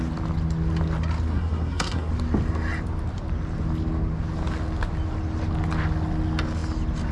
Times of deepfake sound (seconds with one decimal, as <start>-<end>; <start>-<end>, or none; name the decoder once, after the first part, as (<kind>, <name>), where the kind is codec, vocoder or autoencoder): 1.3-2.1 (codec, SNAC)